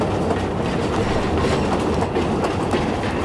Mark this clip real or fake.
real